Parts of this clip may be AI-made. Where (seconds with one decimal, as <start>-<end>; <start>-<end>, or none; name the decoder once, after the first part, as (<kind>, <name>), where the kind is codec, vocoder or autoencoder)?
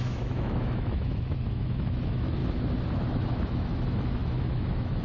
0.0-2.4 (autoencoder, DAC-VAE); 3.1-5.0